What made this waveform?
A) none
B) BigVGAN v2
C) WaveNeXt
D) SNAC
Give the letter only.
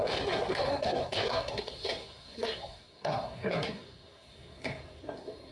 D